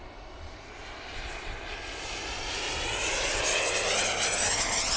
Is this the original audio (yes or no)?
yes